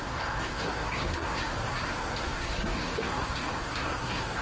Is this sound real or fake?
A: fake